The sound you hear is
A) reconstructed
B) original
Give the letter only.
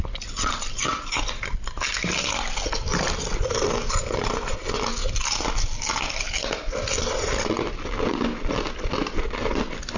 B